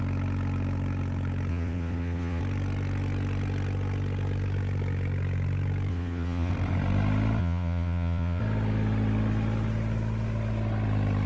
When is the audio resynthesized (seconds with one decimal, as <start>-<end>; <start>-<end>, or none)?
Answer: 1.5-2.4; 5.9-6.5; 7.4-8.4